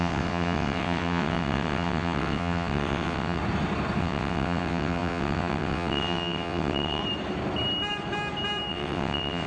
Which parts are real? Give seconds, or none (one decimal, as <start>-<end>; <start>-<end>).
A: 3.4-4.0; 7.0-8.7